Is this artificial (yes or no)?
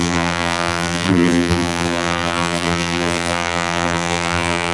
yes